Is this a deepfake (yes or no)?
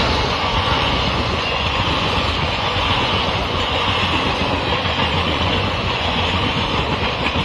yes